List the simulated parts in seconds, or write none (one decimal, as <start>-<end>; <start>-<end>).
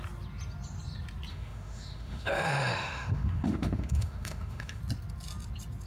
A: 1.3-4.8